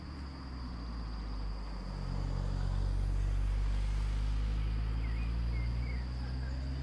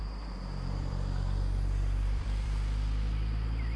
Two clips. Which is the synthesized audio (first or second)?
second